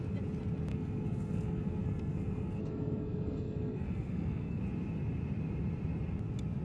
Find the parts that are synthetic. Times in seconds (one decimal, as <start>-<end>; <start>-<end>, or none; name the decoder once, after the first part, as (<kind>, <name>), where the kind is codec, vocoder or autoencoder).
0.7-4.6 (codec, SNAC)